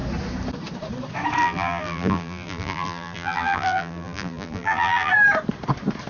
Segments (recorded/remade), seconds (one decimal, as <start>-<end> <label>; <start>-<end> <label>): 0.0-1.4 recorded; 1.4-5.1 remade; 5.1-6.1 recorded